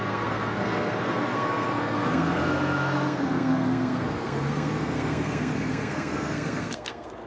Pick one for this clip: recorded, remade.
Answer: remade